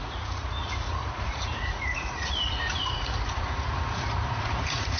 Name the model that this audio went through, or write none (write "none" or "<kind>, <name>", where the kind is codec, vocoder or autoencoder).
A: vocoder, Vocos